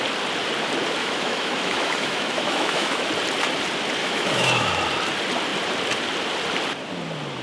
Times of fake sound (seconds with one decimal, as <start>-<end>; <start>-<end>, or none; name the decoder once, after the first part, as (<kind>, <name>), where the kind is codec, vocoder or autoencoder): 1.0-3.1 (autoencoder, DAC-VAE); 4.0-4.7